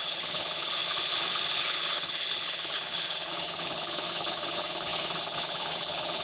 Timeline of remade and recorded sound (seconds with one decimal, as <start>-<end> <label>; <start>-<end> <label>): 0.0-6.2 remade